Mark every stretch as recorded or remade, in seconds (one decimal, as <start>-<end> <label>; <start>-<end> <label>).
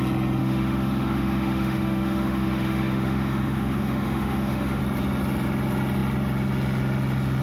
0.0-0.4 recorded; 0.4-4.8 remade; 4.8-7.4 recorded